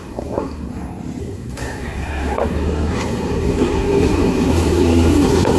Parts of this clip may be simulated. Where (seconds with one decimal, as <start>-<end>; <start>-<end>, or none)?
0.0-0.7; 1.2-5.6

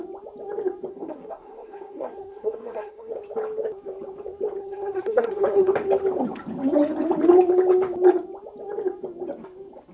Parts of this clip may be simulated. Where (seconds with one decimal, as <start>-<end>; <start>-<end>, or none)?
0.9-3.1; 4.6-5.7

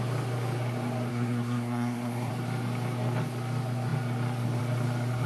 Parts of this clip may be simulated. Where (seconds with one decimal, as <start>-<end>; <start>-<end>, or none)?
1.1-2.3

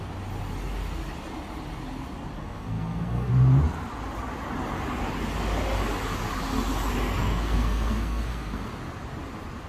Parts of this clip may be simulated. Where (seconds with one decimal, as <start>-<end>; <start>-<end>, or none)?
2.4-3.3; 7.2-8.7